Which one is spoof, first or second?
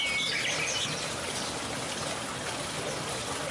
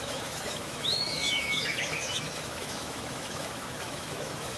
second